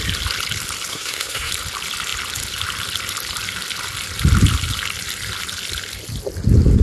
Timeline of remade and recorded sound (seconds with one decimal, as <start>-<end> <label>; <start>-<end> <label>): 0.0-0.9 recorded; 0.9-1.5 remade; 1.5-6.8 recorded